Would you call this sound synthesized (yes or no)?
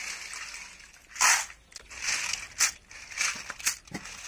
no